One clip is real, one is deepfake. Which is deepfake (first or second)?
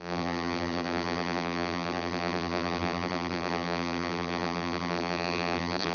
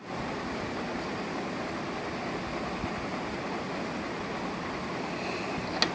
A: first